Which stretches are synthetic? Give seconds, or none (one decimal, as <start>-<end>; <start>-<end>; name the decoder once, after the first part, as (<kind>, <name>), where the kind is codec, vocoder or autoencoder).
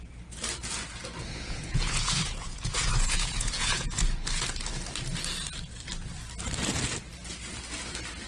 1.2-4.0 (vocoder, Vocos)